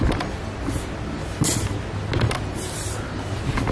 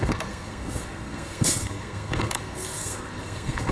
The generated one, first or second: second